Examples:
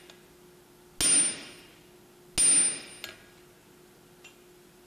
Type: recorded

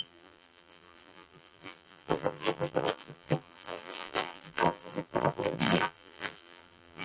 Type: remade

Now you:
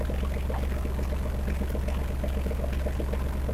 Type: recorded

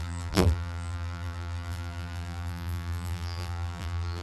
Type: remade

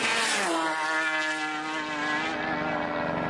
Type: recorded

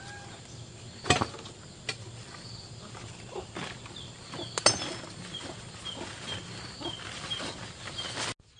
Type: recorded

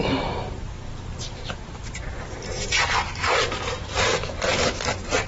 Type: remade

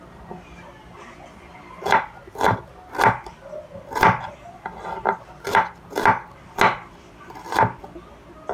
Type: recorded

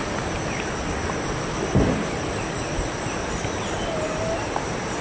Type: remade